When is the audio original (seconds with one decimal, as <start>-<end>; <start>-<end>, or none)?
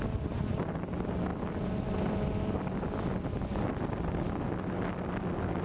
0.0-5.6